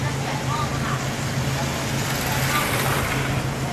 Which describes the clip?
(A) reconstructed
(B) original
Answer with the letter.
B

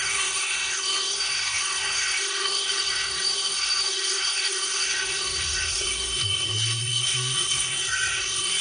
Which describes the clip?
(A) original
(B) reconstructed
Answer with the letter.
B